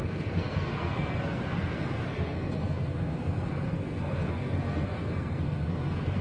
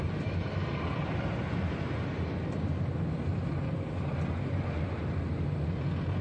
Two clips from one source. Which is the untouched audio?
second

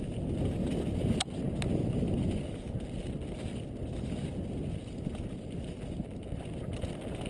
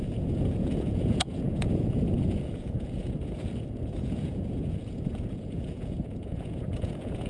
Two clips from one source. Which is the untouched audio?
first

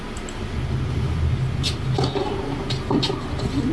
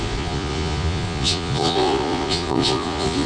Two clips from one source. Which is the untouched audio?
first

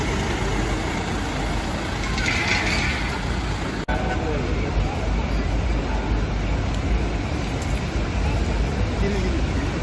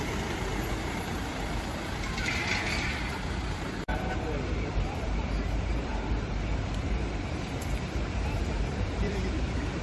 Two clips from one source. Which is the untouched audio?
first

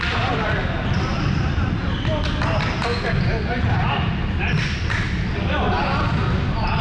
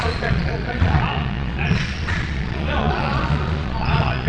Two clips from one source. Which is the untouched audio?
first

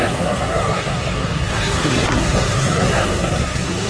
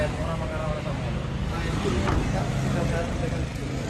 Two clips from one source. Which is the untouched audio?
second